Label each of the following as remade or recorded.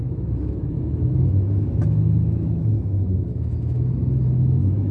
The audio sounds remade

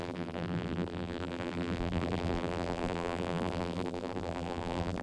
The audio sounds remade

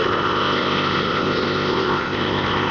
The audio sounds remade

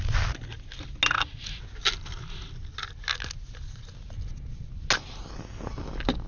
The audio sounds recorded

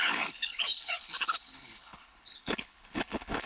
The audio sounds remade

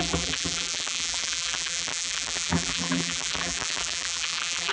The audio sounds remade